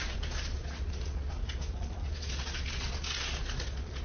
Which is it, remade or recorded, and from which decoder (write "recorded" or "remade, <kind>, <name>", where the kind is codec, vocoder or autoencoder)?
remade, vocoder, Vocos